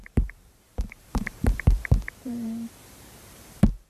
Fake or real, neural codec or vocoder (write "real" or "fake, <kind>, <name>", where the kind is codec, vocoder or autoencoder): fake, vocoder, BigVGAN v2